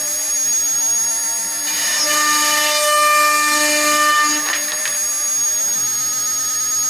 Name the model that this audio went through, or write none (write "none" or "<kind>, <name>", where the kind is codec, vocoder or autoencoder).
none